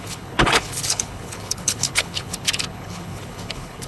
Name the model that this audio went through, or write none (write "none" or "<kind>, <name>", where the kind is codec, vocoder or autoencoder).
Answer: codec, HILCodec